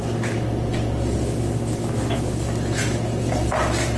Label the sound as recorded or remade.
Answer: recorded